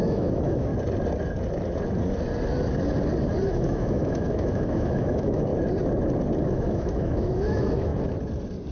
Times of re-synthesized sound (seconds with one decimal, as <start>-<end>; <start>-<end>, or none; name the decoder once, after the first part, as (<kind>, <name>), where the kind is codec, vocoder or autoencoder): 0.0-0.7 (autoencoder, DAC-VAE); 3.5-5.5; 6.4-7.9